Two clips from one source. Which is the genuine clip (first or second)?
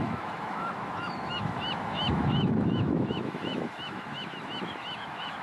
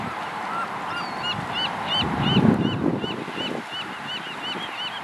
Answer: second